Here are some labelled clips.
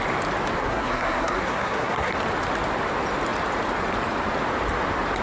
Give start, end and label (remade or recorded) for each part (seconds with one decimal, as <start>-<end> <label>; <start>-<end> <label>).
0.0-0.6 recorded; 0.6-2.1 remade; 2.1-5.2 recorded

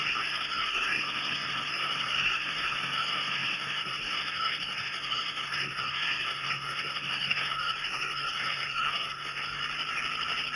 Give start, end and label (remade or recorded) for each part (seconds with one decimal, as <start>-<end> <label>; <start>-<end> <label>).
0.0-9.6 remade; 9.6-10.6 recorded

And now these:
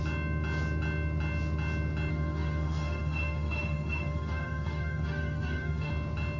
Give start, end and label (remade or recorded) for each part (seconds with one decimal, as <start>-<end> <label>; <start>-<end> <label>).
0.0-2.1 recorded; 2.1-5.9 remade; 5.9-6.4 recorded

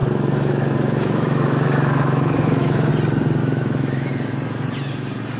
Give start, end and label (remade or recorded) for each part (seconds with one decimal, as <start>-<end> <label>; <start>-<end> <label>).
0.0-2.9 remade; 2.9-3.4 recorded; 3.4-4.1 remade; 4.1-5.4 recorded